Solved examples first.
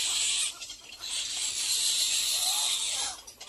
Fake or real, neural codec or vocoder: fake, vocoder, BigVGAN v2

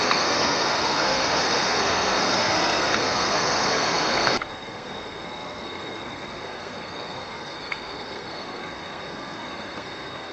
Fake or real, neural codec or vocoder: fake, codec, SNAC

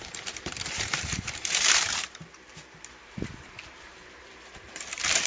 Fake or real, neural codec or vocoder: fake, vocoder, BigVGAN v2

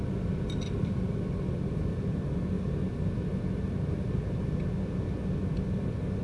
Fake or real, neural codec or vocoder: real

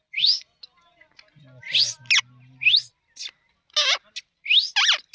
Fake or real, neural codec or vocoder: real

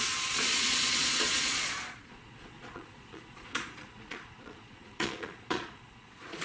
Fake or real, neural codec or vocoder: fake, vocoder, Vocos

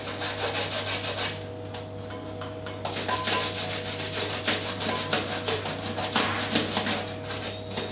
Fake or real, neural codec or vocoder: real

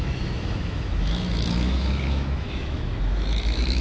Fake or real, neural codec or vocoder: fake, autoencoder, DAC-VAE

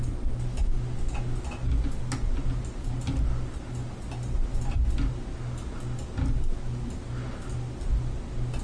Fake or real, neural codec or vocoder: real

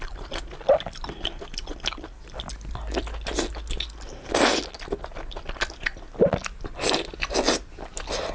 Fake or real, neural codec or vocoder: real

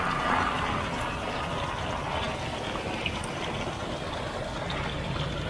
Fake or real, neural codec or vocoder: real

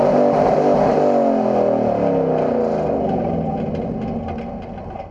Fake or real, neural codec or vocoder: real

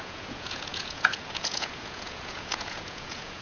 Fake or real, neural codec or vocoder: fake, vocoder, Vocos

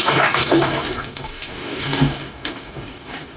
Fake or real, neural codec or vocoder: fake, codec, DAC